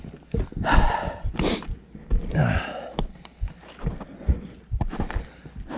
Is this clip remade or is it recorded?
recorded